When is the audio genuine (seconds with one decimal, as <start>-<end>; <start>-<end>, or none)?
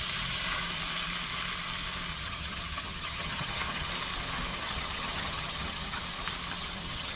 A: 0.0-2.1; 3.9-4.5; 6.0-6.6